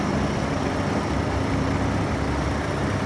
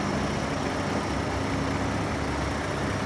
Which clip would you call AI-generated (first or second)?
first